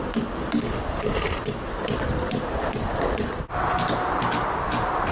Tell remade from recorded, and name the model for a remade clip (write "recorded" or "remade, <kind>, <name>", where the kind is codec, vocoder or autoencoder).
recorded